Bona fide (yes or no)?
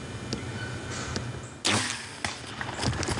yes